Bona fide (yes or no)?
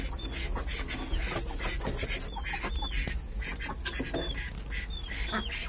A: yes